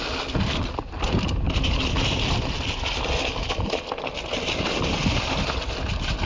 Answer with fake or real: real